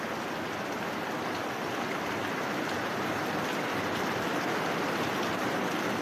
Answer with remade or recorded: recorded